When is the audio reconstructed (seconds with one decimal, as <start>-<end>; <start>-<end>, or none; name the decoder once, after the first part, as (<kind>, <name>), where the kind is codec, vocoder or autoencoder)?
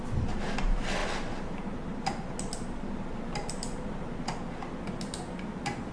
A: none